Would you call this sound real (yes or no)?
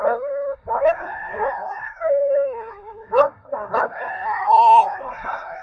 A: no